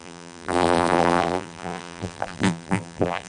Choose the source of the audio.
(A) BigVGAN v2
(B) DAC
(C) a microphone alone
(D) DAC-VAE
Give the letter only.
A